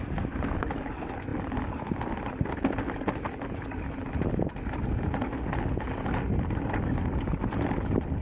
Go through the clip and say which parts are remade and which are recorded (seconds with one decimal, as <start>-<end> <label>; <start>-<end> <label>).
0.0-8.2 recorded